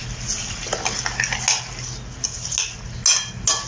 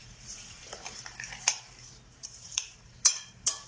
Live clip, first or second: first